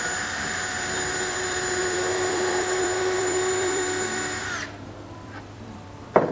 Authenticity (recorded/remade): remade